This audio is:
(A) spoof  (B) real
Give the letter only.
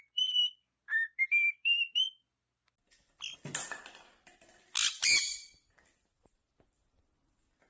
B